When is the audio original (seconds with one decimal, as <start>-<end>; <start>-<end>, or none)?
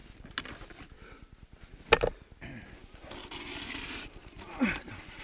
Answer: 0.0-5.2